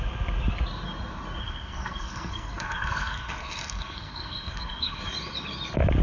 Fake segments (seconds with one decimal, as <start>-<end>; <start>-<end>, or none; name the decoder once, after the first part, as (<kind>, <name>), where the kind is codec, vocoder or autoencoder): 1.4-5.0 (codec, SNAC)